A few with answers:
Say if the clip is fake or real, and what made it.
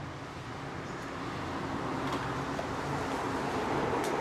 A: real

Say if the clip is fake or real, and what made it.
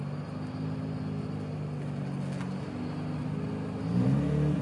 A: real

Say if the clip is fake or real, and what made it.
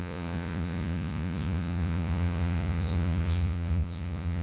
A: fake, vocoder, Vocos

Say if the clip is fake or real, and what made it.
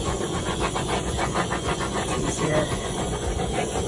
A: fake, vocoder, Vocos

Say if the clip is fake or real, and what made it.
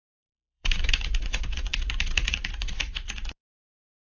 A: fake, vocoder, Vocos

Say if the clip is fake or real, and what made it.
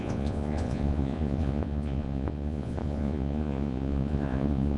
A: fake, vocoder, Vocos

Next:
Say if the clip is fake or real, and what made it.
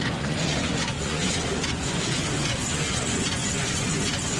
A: fake, vocoder, Vocos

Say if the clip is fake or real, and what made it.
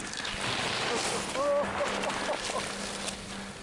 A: real